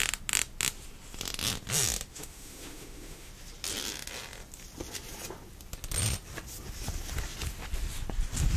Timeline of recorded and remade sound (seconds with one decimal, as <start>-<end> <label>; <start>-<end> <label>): 0.0-2.1 recorded; 2.1-3.3 remade; 3.3-8.6 recorded